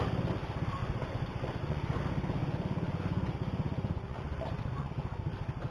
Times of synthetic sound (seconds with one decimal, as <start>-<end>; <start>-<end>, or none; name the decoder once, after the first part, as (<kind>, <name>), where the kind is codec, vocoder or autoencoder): 0.8-2.0 (vocoder, Vocos); 2.4-4.9